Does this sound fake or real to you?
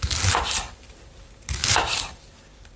real